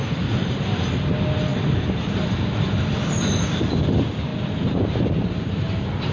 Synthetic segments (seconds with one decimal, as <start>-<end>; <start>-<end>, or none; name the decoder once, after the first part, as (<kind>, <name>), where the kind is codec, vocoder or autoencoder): 0.4-0.9 (vocoder, BigVGAN v2); 1.5-2.7; 4.3-6.1

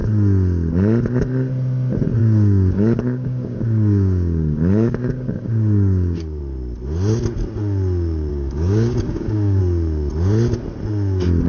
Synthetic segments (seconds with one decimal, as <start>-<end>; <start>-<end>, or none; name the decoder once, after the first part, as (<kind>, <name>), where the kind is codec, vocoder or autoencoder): 2.2-6.4 (codec, DAC); 8.3-9.6

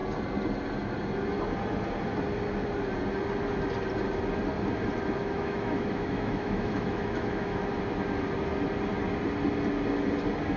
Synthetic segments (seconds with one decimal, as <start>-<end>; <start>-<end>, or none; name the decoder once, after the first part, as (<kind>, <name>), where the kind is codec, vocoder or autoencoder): 5.2-7.6 (autoencoder, DAC-VAE)

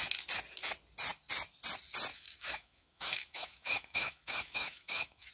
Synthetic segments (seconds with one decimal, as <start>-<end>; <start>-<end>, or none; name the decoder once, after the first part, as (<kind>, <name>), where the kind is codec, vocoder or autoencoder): 2.1-5.3 (autoencoder, DAC-VAE)

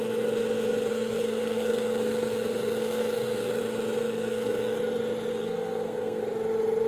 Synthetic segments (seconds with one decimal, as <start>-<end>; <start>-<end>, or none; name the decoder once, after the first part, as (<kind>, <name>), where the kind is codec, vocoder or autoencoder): 0.9-3.6 (codec, SNAC); 4.0-4.8; 5.3-6.2

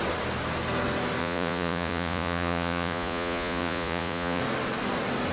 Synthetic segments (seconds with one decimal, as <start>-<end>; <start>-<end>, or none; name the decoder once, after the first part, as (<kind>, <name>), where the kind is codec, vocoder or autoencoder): 1.2-4.4 (vocoder, Vocos)

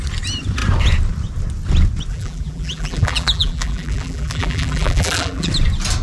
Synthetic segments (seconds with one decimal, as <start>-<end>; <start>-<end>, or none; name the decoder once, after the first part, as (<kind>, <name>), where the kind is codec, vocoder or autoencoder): 2.1-5.5 (vocoder, BigVGAN v2)

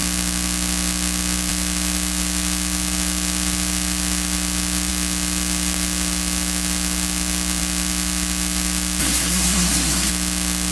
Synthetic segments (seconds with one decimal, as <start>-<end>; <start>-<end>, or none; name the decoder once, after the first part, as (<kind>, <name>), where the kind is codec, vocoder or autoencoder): 9.0-10.1 (codec, SNAC)